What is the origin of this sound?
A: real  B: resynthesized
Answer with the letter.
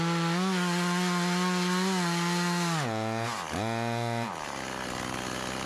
A